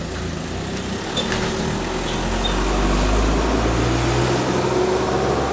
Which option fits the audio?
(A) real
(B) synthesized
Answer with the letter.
A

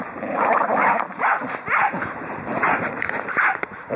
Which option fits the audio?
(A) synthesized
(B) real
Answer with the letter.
A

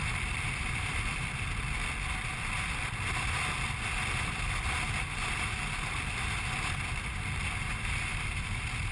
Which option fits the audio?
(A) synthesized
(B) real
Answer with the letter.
A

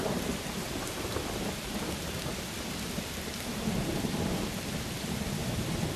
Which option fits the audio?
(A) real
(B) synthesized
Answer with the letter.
B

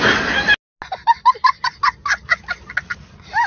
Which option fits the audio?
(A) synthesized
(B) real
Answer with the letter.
B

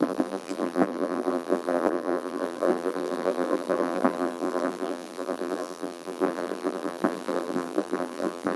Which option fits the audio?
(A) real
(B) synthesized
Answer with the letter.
B